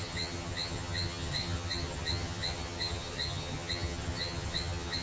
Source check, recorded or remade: remade